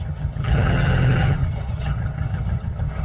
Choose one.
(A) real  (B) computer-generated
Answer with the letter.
B